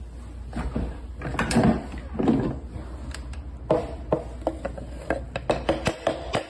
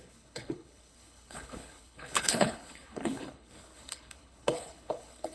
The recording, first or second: first